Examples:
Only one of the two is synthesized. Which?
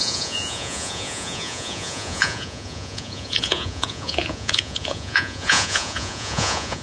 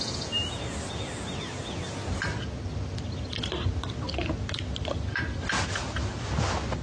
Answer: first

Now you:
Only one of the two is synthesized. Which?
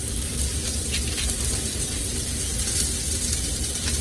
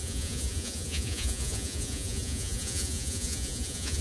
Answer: second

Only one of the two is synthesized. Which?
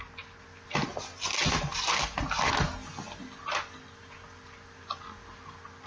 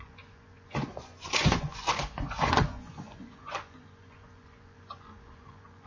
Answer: second